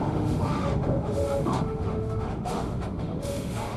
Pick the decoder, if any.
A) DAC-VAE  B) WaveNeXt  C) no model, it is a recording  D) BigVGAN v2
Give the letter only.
A